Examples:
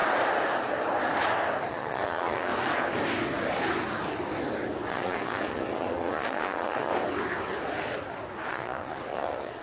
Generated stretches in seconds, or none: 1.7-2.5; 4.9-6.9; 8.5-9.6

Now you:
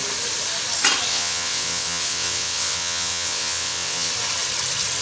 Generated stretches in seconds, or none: 1.1-4.1

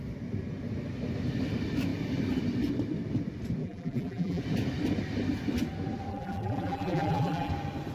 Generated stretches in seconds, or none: 3.6-4.4; 6.1-7.5

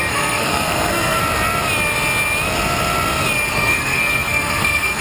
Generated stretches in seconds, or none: 0.0-1.2; 3.5-5.0

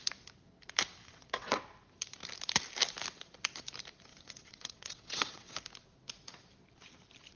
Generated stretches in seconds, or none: 1.0-1.6; 4.1-5.5